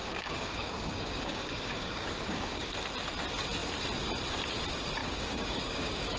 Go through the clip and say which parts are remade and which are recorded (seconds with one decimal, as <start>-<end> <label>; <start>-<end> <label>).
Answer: 0.0-2.7 remade; 2.7-5.0 recorded; 5.0-6.2 remade